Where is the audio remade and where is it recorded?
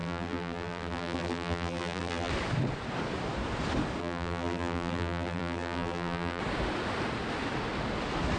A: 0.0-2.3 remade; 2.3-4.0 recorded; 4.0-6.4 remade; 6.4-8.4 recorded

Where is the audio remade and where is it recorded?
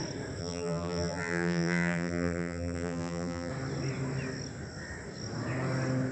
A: 0.0-0.4 recorded; 0.4-3.5 remade; 3.5-6.1 recorded